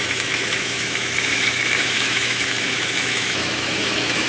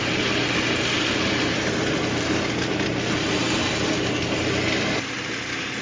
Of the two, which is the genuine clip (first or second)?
second